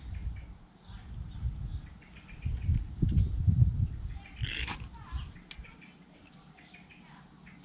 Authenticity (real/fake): real